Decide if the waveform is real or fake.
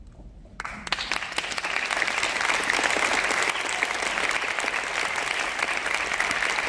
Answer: real